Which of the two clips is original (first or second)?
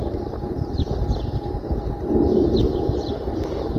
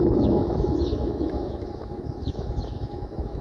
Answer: first